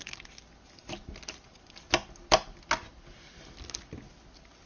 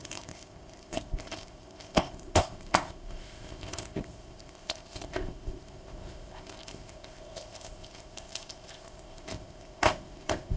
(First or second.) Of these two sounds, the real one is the first